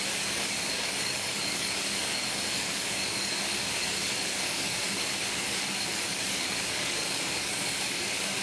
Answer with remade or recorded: remade